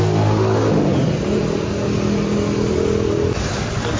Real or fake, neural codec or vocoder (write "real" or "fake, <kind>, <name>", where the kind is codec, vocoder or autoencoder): real